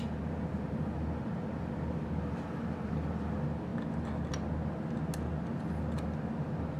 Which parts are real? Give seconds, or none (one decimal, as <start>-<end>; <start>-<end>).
0.0-6.8